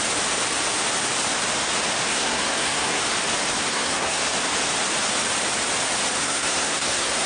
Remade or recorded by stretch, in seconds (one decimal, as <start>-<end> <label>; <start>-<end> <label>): 0.0-2.1 recorded; 2.1-3.0 remade; 3.0-3.6 recorded; 3.6-4.2 remade; 4.2-6.2 recorded; 6.2-7.3 remade